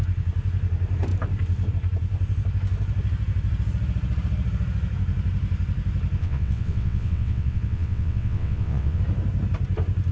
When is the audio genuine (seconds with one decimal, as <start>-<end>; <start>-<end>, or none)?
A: 0.0-6.2; 9.0-10.1